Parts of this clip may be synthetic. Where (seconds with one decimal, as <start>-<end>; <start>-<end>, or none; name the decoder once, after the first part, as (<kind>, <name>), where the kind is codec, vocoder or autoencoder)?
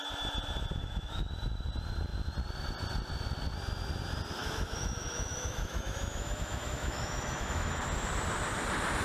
0.8-1.3 (autoencoder, DAC-VAE); 4.4-7.8